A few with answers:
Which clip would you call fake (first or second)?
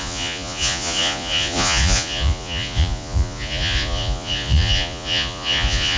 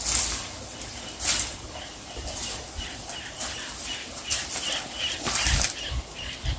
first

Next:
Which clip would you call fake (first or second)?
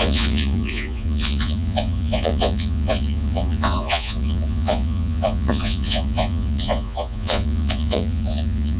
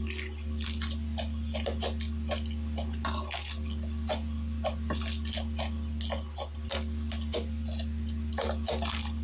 first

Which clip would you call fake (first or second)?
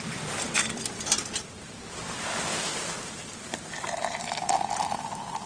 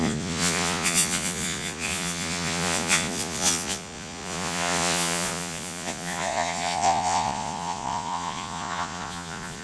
second